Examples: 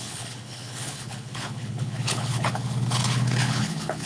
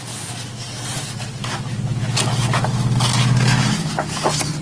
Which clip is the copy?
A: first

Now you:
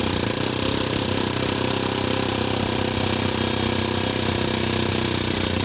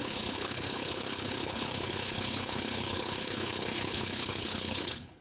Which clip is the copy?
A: second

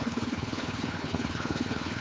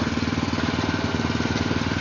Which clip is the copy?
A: first